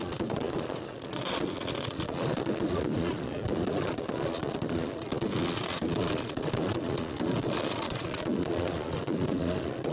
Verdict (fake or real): fake